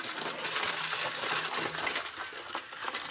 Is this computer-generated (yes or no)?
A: no